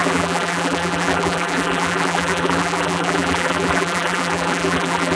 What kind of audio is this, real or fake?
fake